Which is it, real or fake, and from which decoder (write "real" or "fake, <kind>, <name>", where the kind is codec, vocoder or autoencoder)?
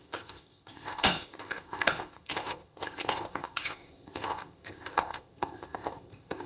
fake, codec, ZipCodec